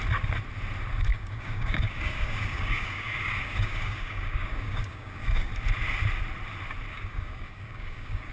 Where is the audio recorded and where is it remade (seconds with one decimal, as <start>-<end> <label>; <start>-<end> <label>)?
0.0-1.1 recorded; 1.1-5.5 remade; 5.5-6.9 recorded; 6.9-8.3 remade